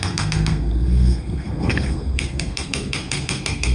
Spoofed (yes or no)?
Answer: yes